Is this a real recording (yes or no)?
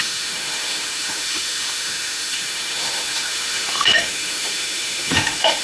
no